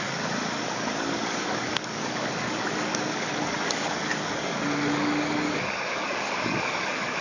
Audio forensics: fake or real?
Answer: fake